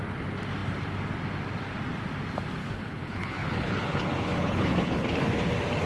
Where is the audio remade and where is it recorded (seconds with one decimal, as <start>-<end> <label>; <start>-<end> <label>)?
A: 0.0-2.6 recorded; 2.6-5.2 remade; 5.2-5.9 recorded